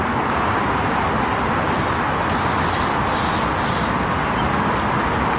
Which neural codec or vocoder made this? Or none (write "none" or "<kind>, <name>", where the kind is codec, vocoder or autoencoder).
none